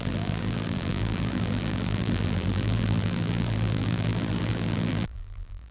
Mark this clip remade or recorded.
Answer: remade